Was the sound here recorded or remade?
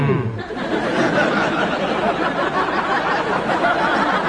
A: recorded